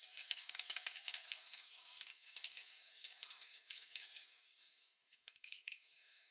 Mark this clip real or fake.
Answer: fake